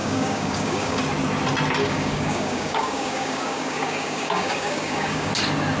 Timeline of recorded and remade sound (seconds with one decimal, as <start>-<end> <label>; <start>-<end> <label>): 0.0-1.0 remade; 1.0-1.8 recorded; 1.8-5.3 remade; 5.3-5.8 recorded